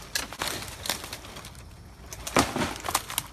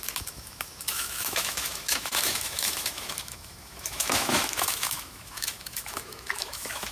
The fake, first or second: second